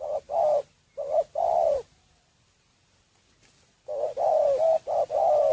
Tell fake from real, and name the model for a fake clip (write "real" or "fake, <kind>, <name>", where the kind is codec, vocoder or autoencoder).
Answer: real